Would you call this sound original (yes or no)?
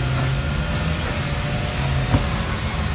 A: yes